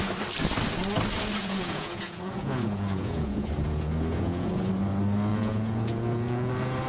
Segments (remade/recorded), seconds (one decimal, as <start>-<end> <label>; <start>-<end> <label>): 0.0-1.4 recorded; 1.4-4.7 remade; 4.7-5.3 recorded; 5.3-6.5 remade; 6.5-6.9 recorded

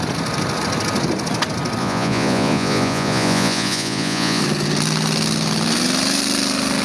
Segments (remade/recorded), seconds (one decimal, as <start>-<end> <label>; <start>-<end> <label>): 0.0-1.8 recorded; 1.8-4.4 remade; 4.4-6.8 recorded

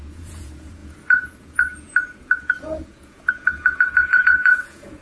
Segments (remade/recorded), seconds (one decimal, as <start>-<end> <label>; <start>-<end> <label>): 0.0-5.0 remade

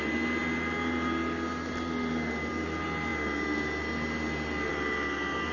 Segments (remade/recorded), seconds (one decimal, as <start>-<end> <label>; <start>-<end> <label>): 0.0-5.5 recorded

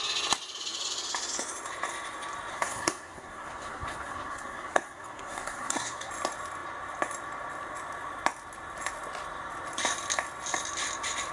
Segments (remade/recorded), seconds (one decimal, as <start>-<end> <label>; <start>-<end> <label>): 0.0-2.5 recorded; 2.5-6.1 remade; 6.1-11.3 recorded

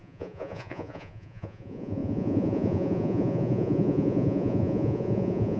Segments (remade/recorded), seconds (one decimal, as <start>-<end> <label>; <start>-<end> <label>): 0.0-5.6 remade

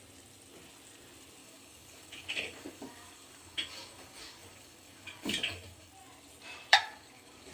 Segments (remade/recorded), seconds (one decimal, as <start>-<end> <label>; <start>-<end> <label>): 0.0-1.4 recorded; 1.4-5.9 remade; 5.9-6.7 recorded; 6.7-7.5 remade